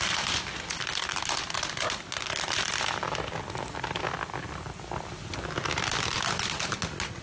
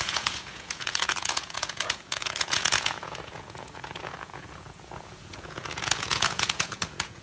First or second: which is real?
first